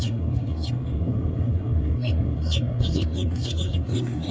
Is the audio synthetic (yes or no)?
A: yes